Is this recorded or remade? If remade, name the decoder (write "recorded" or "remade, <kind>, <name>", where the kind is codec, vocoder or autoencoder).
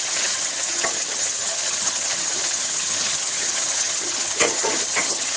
remade, vocoder, HiFi-GAN